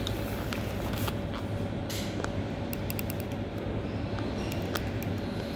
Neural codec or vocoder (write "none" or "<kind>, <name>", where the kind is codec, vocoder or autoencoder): none